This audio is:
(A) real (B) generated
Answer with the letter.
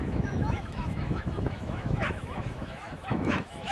B